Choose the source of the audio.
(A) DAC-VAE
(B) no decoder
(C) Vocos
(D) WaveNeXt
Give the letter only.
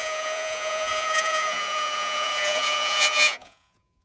C